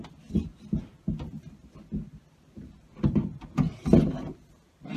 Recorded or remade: remade